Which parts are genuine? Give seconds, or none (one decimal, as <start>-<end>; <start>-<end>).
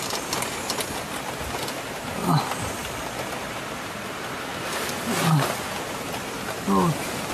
0.0-7.3